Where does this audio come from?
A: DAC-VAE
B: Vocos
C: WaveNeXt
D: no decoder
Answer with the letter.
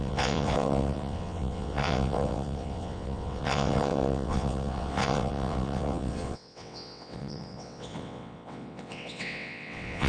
C